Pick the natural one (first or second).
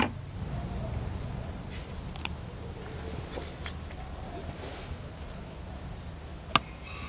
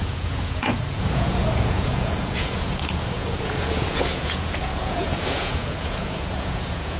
first